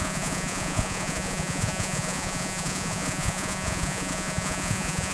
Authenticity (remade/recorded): remade